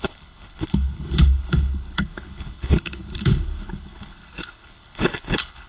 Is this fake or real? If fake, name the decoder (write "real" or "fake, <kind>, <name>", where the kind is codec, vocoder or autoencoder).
fake, codec, HILCodec